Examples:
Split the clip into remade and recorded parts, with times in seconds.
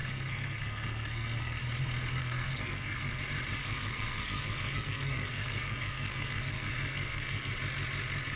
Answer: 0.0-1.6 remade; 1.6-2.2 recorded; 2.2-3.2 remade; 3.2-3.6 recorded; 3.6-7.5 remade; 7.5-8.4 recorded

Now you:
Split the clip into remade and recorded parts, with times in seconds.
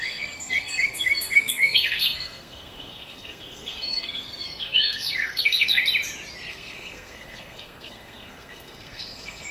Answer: 0.0-5.8 remade; 5.8-6.5 recorded; 6.5-9.5 remade